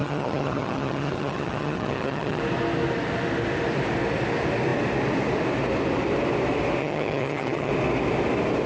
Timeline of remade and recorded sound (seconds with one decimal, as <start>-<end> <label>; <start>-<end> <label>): 0.0-2.4 remade; 2.4-6.8 recorded; 6.8-7.7 remade; 7.7-8.7 recorded